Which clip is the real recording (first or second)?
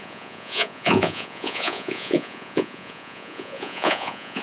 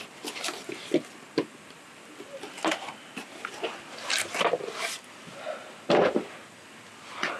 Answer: second